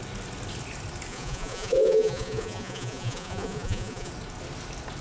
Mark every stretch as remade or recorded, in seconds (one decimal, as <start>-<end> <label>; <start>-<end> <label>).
0.0-1.1 recorded; 1.1-4.1 remade; 4.1-5.0 recorded